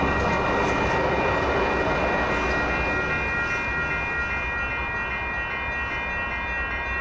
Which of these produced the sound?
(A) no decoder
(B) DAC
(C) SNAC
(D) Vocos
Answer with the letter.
A